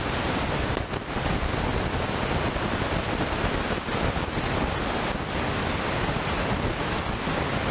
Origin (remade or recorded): recorded